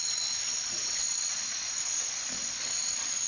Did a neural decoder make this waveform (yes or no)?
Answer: yes